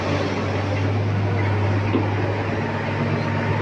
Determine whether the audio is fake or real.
real